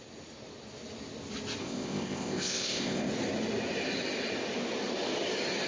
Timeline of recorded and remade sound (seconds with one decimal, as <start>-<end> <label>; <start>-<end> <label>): 0.0-1.6 recorded; 1.6-3.1 remade; 3.1-5.7 recorded